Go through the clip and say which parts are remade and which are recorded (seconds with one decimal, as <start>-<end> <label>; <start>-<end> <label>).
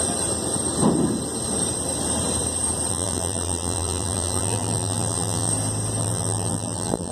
0.0-2.9 recorded; 2.9-5.5 remade; 5.5-6.0 recorded; 6.0-7.1 remade